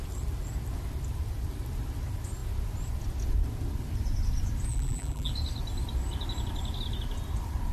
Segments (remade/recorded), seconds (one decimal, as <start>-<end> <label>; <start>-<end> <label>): 0.0-4.7 recorded; 4.7-5.3 remade; 5.3-7.7 recorded

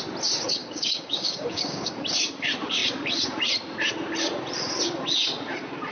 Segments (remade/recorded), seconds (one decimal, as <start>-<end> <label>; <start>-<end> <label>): 0.0-0.6 recorded; 0.6-1.9 remade; 1.9-5.9 recorded

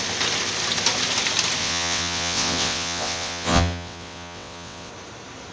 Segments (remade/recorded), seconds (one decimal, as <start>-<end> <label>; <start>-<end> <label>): 0.0-1.6 recorded; 1.6-4.9 remade; 4.9-5.5 recorded

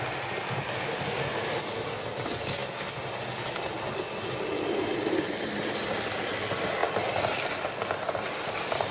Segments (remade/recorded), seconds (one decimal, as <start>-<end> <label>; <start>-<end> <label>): 0.0-8.9 recorded

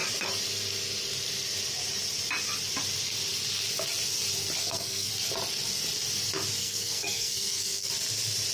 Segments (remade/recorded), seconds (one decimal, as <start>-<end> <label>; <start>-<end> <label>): 0.0-4.6 recorded; 4.6-5.1 remade; 5.1-6.6 recorded; 6.6-7.9 remade; 7.9-8.5 recorded

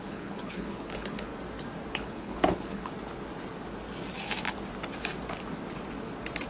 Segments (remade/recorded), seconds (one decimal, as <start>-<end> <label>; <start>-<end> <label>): 0.0-1.3 remade; 1.3-1.9 recorded; 1.9-2.9 remade; 2.9-6.5 recorded